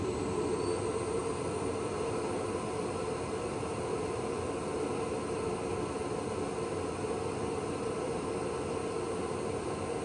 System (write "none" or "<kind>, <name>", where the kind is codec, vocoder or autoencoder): none